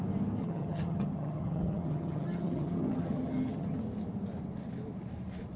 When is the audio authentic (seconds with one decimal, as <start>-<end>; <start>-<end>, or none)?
0.0-0.4; 3.8-5.6

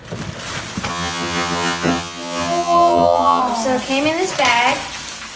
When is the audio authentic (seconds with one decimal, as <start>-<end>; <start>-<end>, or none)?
0.0-0.9; 3.4-5.4

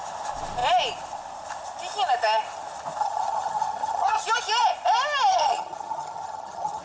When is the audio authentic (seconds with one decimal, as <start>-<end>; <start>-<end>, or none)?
0.0-3.0; 4.2-5.3

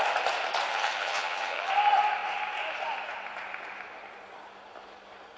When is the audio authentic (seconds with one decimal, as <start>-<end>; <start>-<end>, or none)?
0.0-0.7; 1.7-5.4

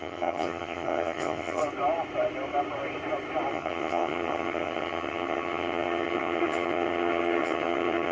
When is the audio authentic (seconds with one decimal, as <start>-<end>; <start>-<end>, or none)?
1.6-3.5

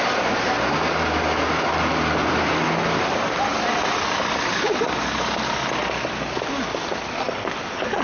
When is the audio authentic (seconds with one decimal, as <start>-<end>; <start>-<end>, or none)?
0.0-8.0

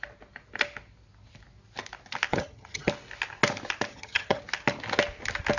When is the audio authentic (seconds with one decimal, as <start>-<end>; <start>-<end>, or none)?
0.0-2.3; 2.9-3.9; 4.4-5.6